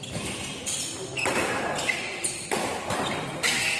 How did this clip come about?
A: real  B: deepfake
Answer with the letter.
B